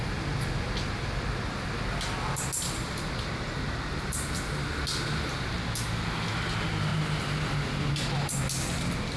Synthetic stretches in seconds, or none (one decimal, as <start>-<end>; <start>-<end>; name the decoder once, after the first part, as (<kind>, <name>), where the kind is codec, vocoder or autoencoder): none